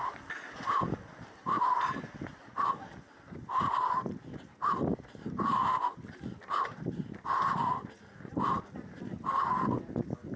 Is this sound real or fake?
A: real